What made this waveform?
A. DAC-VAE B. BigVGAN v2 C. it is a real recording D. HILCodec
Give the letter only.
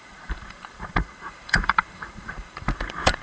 B